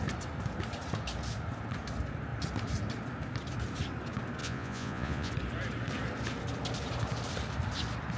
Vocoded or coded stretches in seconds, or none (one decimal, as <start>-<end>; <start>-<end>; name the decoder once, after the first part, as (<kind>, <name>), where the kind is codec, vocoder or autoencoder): 4.4-5.3 (vocoder, Vocos)